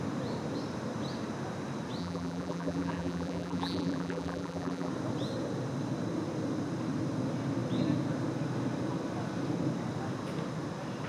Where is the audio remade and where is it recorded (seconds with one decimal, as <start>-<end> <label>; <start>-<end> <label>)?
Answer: 0.0-2.0 recorded; 2.0-4.9 remade; 4.9-11.1 recorded